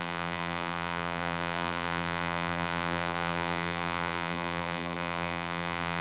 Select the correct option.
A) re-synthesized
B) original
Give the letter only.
A